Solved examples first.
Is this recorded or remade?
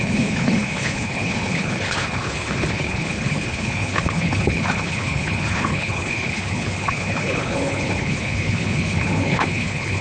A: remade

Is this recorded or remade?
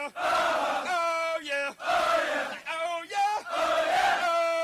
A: recorded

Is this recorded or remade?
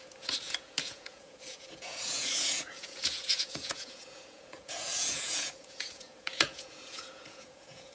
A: remade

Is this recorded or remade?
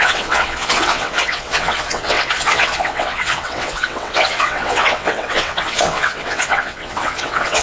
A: remade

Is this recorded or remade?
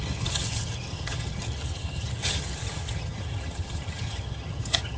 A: remade